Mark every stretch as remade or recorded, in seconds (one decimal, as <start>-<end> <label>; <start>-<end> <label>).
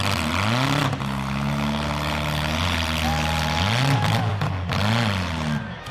0.0-5.9 recorded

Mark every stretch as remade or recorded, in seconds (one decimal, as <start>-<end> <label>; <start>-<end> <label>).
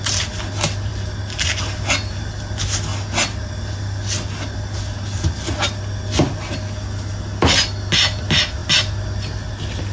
0.0-9.9 recorded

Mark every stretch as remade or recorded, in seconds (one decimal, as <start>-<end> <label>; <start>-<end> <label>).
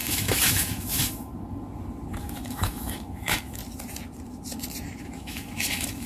0.0-1.3 remade; 1.3-2.2 recorded; 2.2-3.6 remade; 3.6-5.0 recorded; 5.0-6.1 remade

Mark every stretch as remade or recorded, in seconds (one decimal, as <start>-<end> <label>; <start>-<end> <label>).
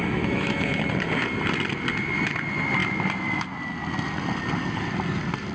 0.0-0.9 remade; 0.9-5.5 recorded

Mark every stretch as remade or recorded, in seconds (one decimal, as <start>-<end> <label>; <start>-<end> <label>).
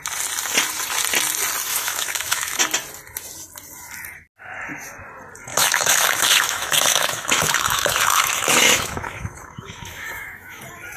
0.0-1.7 recorded; 1.7-2.6 remade; 2.6-5.5 recorded; 5.5-10.6 remade; 10.6-11.0 recorded